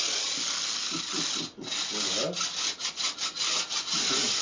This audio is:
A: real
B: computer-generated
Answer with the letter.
A